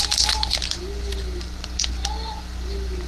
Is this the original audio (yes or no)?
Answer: yes